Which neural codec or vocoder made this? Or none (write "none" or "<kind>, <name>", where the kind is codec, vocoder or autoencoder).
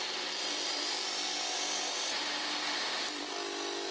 vocoder, BigVGAN v2